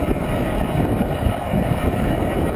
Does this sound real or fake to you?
fake